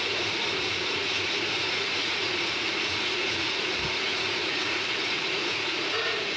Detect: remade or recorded remade